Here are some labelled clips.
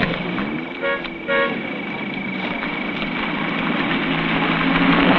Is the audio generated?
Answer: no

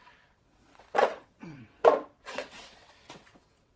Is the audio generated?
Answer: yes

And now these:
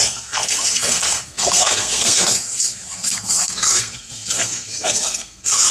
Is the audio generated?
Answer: yes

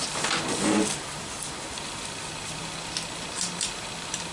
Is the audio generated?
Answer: no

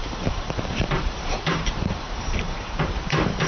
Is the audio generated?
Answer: yes